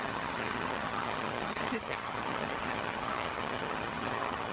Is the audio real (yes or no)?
no